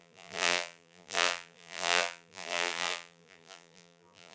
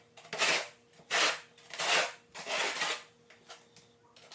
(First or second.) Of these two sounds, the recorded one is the second